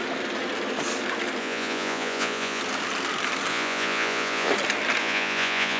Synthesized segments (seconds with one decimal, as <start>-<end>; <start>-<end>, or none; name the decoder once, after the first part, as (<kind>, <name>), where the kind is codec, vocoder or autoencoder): 1.4-2.6 (vocoder, Vocos); 3.5-4.5; 5.0-5.8